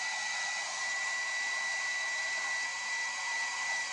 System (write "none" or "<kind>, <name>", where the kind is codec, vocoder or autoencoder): none